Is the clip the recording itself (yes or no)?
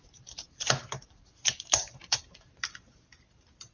no